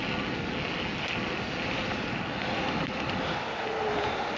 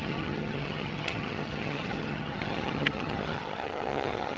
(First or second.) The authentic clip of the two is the first